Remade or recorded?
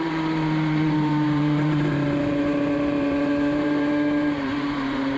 remade